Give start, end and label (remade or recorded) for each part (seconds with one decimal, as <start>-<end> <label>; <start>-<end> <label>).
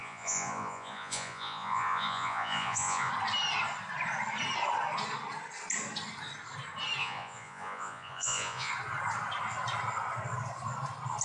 0.0-3.1 remade; 3.1-7.0 recorded; 7.0-8.7 remade; 8.7-11.2 recorded